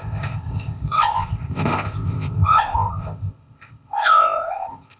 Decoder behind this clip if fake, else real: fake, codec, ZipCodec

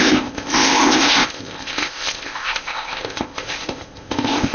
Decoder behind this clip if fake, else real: fake, codec, ZipCodec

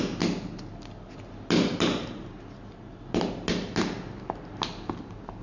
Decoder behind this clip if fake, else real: real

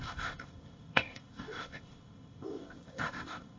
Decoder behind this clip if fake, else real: fake, codec, ZipCodec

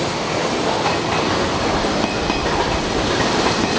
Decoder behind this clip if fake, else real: real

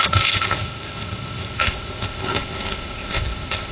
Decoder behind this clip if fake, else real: fake, codec, ZipCodec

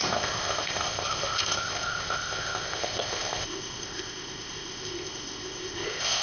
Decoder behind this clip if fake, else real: fake, codec, ZipCodec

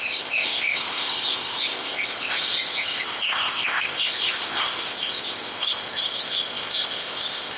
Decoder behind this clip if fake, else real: fake, codec, ZipCodec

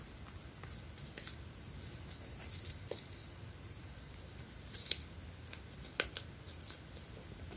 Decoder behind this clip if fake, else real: real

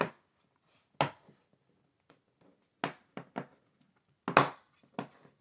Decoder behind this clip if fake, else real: real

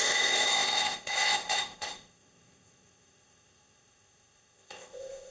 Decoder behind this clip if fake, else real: fake, codec, ZipCodec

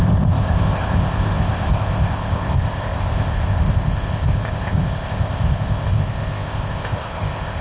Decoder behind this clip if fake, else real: fake, codec, ZipCodec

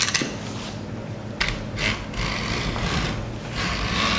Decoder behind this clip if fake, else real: real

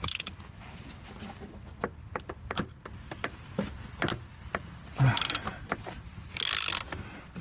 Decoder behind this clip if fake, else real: real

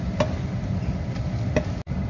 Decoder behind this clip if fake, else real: real